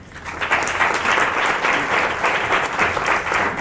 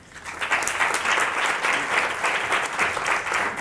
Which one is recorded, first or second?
second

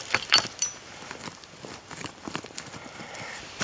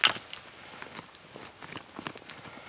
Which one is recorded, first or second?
second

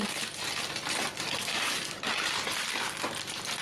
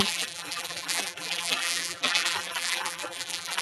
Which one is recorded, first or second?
first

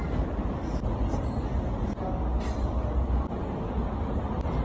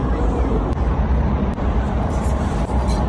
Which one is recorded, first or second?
first